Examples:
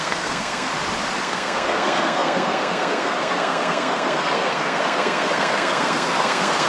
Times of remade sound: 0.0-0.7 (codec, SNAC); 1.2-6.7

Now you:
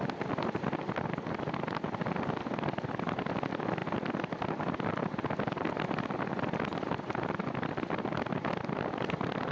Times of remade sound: none

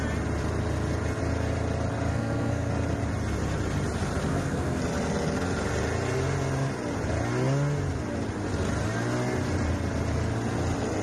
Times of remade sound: 2.1-2.7 (codec, SNAC); 4.3-4.8

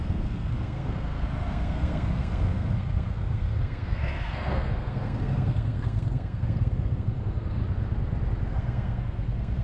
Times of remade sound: 0.0-7.6 (codec, SNAC); 8.5-9.6

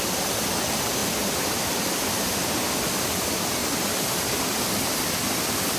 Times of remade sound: none